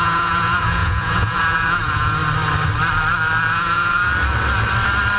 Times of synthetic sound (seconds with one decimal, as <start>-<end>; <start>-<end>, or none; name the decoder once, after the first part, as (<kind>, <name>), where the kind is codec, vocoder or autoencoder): 0.0-2.2 (vocoder, Vocos); 3.4-4.1